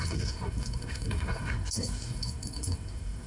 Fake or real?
fake